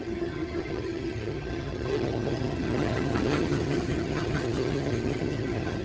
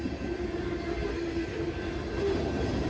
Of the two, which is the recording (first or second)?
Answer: second